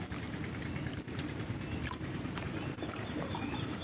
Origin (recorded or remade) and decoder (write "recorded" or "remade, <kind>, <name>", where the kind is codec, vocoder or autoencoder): remade, vocoder, BigVGAN v2